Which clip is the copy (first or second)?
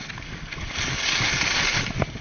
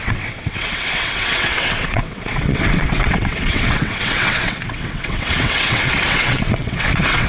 second